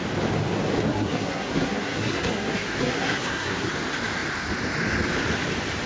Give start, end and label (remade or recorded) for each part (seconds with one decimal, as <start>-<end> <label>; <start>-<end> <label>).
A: 0.0-0.9 recorded; 0.9-3.7 remade; 3.7-5.9 recorded